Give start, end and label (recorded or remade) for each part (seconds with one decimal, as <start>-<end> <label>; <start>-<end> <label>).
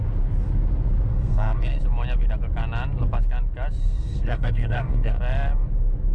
0.0-1.1 recorded; 1.1-1.8 remade; 1.8-3.8 recorded; 3.8-5.2 remade; 5.2-6.1 recorded